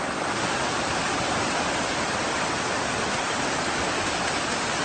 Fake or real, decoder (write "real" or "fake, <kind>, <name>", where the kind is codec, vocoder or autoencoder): real